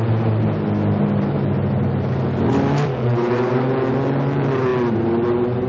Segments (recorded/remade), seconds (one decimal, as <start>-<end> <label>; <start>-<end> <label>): 0.0-2.9 recorded; 2.9-3.7 remade; 3.7-5.7 recorded